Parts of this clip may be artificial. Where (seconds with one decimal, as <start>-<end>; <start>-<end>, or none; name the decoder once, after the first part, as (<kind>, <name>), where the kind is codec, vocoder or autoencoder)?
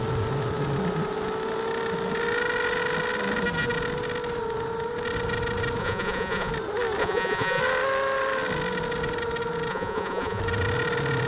5.8-6.5 (vocoder, Vocos); 7.0-7.6; 9.7-10.4